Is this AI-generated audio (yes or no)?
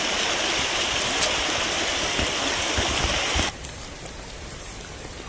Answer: no